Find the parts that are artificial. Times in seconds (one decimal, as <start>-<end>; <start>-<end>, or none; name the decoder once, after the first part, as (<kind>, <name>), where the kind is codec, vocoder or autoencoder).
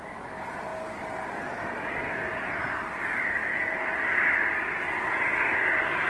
none